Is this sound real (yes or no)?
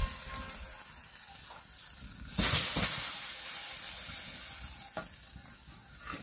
yes